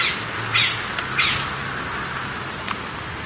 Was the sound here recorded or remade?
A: recorded